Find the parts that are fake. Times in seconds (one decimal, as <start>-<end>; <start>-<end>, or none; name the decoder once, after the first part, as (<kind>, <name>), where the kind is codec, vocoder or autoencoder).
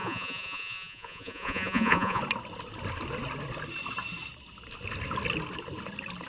0.0-2.2 (vocoder, Vocos)